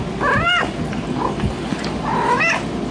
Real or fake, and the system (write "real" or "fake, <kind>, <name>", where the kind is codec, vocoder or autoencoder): real